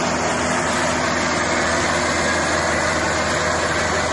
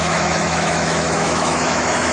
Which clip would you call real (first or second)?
first